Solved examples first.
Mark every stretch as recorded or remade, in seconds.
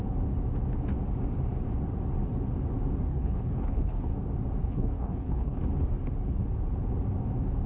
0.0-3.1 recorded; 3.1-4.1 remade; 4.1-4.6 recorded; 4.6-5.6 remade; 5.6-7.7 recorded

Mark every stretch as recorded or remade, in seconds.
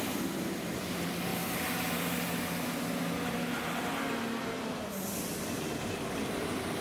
0.0-6.8 recorded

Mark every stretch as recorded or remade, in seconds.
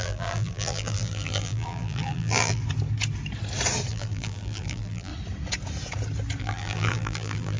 0.0-2.6 remade; 2.6-3.9 recorded; 3.9-5.1 remade; 5.1-6.4 recorded; 6.4-7.6 remade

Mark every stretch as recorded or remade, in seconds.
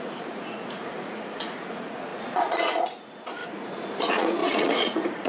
0.0-5.3 remade